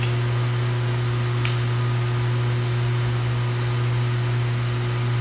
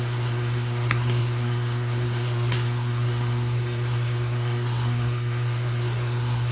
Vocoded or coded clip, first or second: second